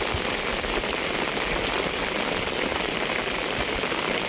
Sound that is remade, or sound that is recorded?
recorded